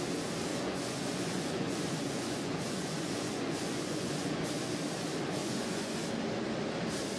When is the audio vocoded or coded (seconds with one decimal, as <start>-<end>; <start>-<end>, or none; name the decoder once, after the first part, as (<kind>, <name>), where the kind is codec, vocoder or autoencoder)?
0.5-4.5 (vocoder, Vocos); 5.4-6.1